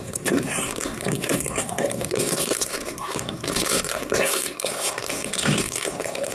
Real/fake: fake